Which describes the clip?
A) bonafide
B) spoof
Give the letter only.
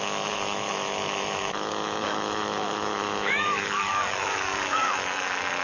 B